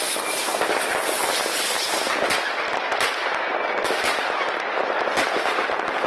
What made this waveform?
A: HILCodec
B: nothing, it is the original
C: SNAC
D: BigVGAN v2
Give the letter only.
B